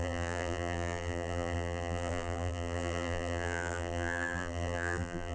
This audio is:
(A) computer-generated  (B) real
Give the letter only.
A